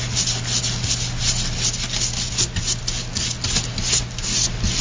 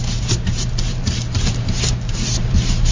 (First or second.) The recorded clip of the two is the first